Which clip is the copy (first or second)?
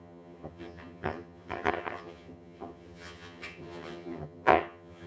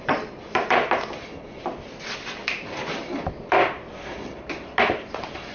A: first